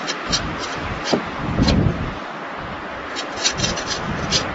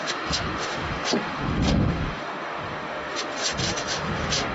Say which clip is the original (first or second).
first